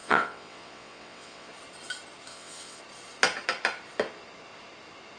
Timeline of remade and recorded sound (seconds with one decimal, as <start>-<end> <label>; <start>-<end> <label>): 0.0-1.5 remade; 1.5-2.3 recorded; 2.3-2.8 remade; 2.8-5.2 recorded